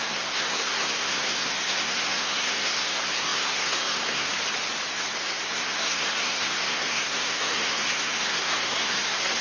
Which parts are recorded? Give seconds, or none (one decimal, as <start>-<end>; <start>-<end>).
4.3-4.9